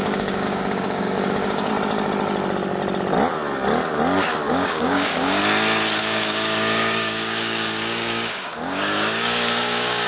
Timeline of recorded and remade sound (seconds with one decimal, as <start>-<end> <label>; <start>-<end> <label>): 0.0-1.7 remade; 1.7-4.5 recorded; 4.5-5.4 remade; 5.4-6.0 recorded; 6.0-10.1 remade